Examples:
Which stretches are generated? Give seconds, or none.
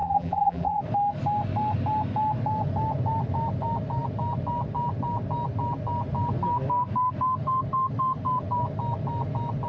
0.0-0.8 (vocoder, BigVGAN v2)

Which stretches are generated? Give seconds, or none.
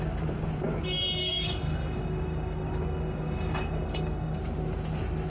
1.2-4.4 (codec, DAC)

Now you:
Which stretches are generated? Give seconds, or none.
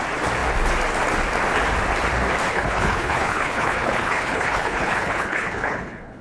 2.5-6.2 (codec, HILCodec)